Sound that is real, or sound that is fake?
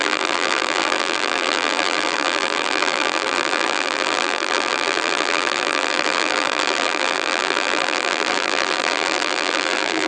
fake